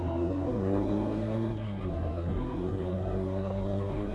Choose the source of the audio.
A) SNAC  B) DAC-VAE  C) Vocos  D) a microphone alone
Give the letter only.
A